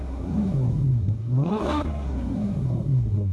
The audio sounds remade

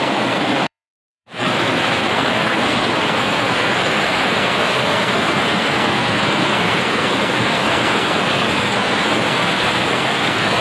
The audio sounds remade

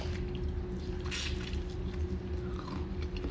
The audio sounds recorded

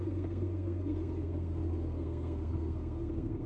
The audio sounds remade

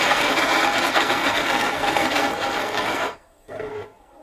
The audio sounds remade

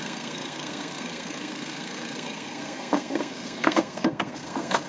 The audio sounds remade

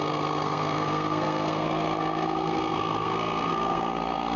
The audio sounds remade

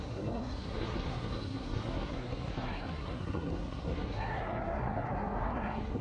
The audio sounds remade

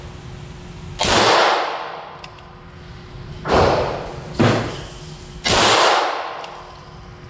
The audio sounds recorded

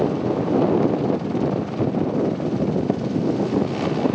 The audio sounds recorded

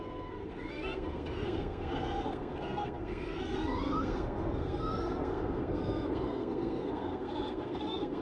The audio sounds remade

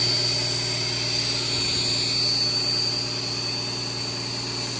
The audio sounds recorded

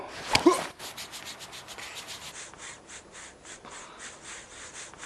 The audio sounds recorded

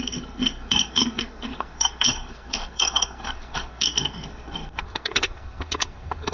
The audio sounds remade